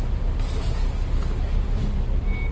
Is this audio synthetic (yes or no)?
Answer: no